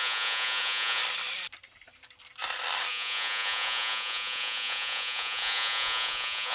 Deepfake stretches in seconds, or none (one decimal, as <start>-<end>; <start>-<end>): 0.0-1.0; 2.9-6.5